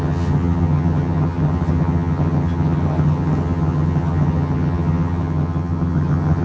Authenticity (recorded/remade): remade